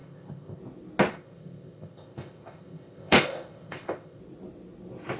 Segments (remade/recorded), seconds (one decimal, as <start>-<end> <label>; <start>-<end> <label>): 0.0-0.6 remade; 0.6-1.1 recorded; 1.1-4.2 remade; 4.2-5.2 recorded